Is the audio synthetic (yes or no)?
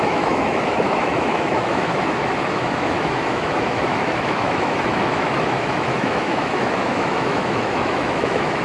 yes